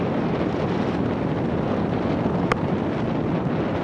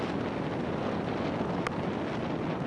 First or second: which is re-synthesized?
first